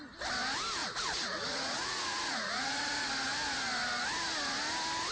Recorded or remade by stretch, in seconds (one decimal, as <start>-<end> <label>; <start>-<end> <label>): 0.0-0.8 recorded; 0.8-3.1 remade; 3.1-5.1 recorded